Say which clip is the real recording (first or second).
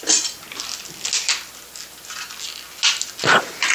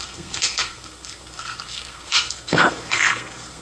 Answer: first